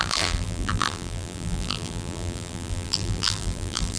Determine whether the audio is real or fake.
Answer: fake